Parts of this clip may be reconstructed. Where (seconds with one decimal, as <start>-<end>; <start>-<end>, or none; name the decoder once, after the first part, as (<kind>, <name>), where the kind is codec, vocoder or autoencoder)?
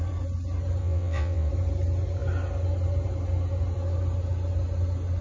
0.8-1.5 (vocoder, WaveNeXt)